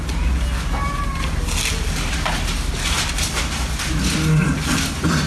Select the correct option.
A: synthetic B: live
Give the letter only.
B